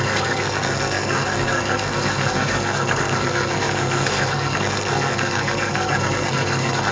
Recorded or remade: remade